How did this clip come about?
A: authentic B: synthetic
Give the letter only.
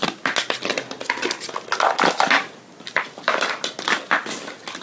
A